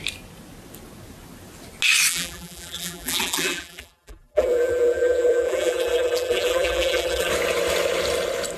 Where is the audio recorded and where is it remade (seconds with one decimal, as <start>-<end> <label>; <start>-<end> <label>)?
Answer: 0.0-2.1 recorded; 2.1-7.3 remade; 7.3-8.6 recorded